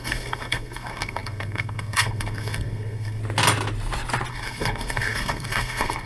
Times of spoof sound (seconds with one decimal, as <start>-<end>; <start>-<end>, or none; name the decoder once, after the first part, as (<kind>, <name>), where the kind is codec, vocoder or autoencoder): 0.0-3.2 (codec, SNAC); 4.3-6.1